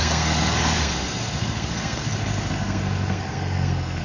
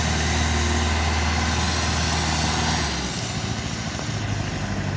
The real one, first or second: second